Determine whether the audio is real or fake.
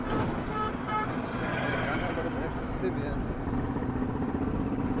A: real